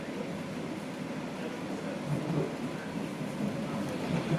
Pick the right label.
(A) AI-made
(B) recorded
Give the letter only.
B